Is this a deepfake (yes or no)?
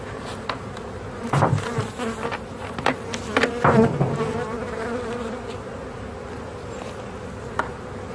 no